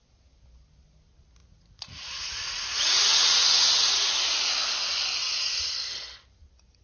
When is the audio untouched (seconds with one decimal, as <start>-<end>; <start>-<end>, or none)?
0.0-1.4; 4.5-5.2; 5.7-6.8